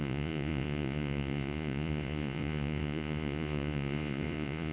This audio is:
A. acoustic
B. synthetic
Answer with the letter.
B